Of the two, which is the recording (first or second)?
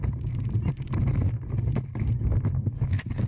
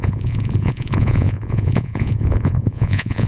first